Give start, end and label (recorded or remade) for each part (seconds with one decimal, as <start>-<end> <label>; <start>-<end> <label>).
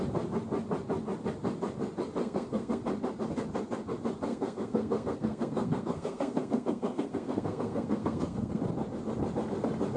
0.0-2.2 recorded; 2.2-2.8 remade; 2.8-4.3 recorded; 4.3-8.6 remade; 8.6-10.0 recorded